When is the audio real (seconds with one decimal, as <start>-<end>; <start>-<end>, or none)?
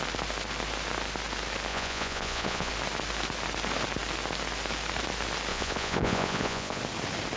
0.0-1.7; 2.7-5.5; 6.8-7.4